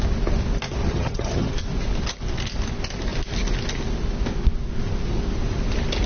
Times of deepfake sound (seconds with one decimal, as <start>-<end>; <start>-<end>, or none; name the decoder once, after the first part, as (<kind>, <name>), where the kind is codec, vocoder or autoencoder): 0.8-1.5 (vocoder, HiFi-GAN)